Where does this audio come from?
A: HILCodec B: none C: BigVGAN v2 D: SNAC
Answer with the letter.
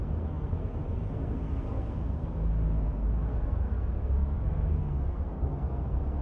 D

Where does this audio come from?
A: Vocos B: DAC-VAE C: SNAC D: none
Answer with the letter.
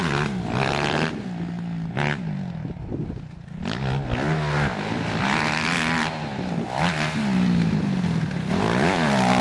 D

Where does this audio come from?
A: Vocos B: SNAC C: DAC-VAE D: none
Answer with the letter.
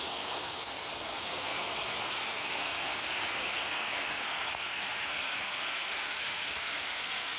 B